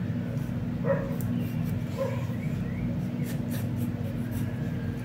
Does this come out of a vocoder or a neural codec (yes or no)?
no